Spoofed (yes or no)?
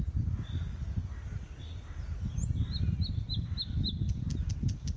no